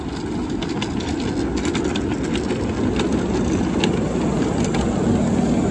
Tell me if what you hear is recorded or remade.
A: recorded